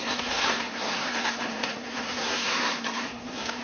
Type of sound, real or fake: fake